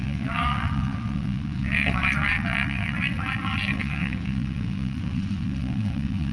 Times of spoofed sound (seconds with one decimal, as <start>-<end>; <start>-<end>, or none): 0.0-6.3